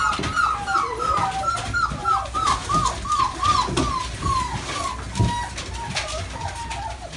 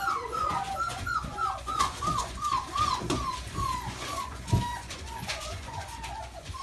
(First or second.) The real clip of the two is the first